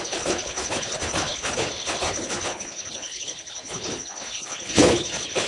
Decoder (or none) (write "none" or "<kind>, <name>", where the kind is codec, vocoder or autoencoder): codec, HILCodec